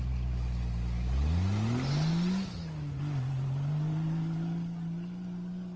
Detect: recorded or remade recorded